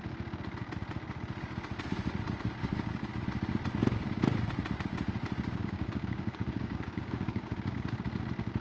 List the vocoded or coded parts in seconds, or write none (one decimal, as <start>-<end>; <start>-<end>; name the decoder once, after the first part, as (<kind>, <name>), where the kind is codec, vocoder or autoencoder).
2.6-3.1 (codec, DAC); 5.6-8.0